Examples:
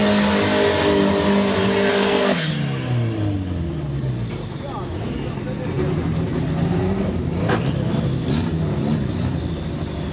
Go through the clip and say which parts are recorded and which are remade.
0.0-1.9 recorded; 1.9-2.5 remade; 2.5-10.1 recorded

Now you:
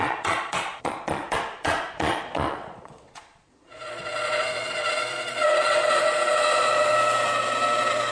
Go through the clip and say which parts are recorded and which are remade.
0.0-6.9 remade; 6.9-8.1 recorded

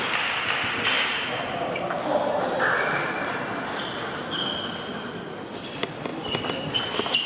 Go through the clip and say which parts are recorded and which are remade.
0.0-7.3 recorded

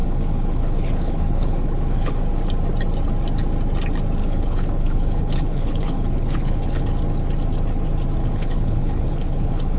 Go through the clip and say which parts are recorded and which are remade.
0.0-2.1 remade; 2.1-4.2 recorded; 4.2-6.9 remade; 6.9-8.2 recorded; 8.2-9.8 remade